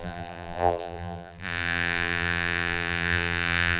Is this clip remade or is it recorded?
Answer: remade